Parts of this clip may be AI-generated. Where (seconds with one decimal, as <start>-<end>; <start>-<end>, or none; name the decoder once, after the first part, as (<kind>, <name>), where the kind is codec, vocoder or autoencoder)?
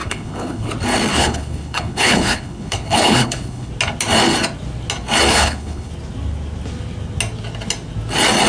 0.0-0.7 (codec, HILCodec); 1.1-3.7; 5.3-5.9